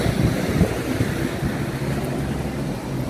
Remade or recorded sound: recorded